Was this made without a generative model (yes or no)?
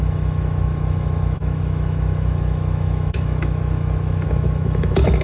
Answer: no